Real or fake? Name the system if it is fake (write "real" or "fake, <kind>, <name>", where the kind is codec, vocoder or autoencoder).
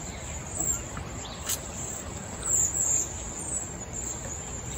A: real